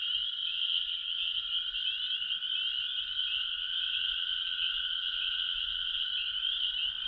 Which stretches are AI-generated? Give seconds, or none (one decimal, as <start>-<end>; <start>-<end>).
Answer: 0.4-1.4; 3.4-6.1